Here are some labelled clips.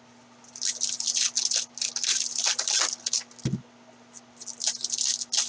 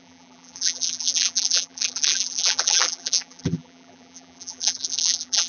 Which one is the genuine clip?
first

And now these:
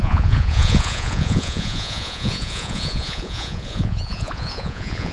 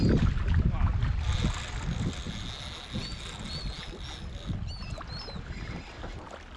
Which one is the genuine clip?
second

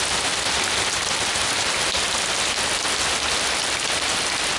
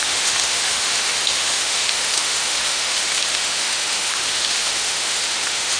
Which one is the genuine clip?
first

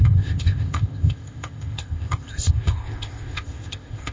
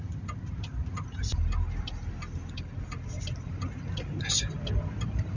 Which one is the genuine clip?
second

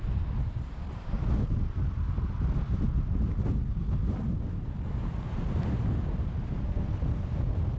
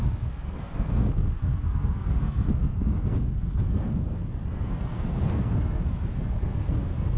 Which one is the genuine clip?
first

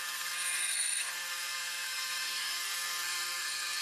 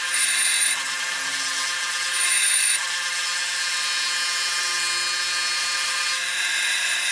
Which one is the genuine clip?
second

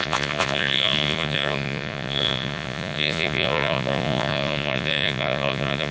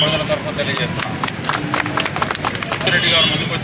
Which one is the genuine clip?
second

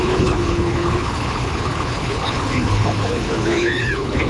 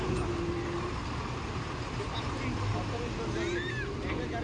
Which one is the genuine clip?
second